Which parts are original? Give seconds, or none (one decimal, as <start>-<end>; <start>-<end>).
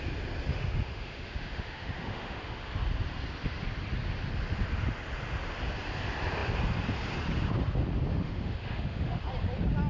0.0-0.5; 2.7-8.1; 9.3-9.9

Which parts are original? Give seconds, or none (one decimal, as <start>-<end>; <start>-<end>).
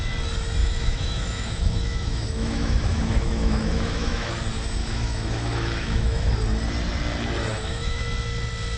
0.0-0.6; 4.3-4.8; 6.3-7.5; 8.0-8.8